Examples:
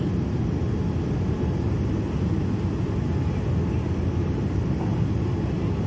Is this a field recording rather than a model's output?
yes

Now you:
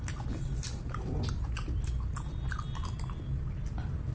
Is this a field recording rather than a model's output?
yes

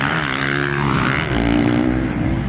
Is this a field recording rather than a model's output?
yes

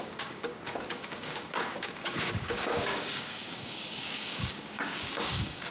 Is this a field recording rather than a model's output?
no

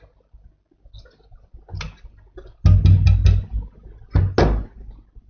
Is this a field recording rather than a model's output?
yes